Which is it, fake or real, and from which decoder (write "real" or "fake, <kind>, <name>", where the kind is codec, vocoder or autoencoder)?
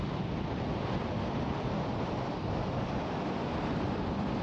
real